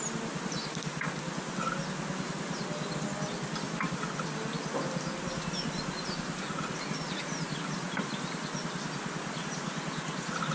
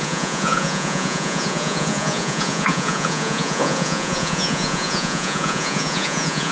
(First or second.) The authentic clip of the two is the first